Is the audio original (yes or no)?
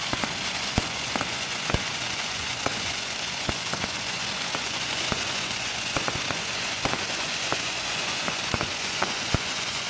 no